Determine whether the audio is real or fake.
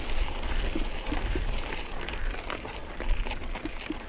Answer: real